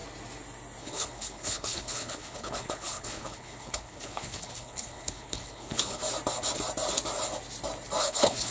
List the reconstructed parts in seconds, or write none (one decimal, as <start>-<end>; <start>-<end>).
0.8-6.0; 8.0-8.5